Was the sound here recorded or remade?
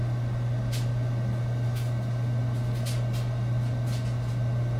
recorded